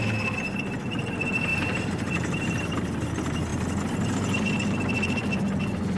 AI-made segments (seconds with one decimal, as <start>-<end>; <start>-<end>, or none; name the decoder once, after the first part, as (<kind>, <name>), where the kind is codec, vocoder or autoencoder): 1.5-2.6 (vocoder, BigVGAN v2)